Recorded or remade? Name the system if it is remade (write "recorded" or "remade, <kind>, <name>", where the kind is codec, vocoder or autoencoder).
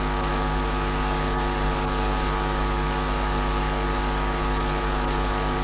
remade, codec, DAC